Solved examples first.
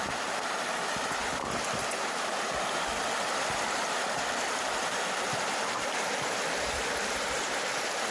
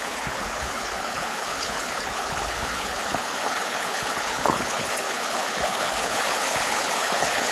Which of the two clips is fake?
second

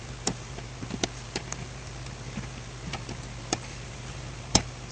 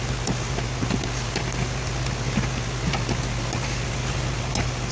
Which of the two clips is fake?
first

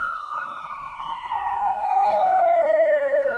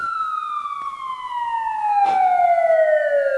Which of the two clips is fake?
first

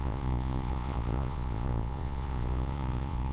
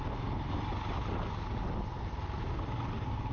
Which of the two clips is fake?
first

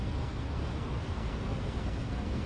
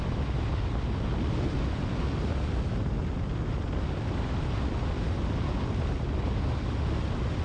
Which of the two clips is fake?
first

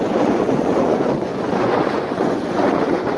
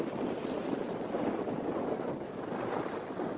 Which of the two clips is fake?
first